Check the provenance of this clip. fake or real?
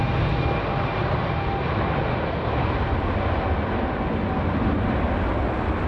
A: real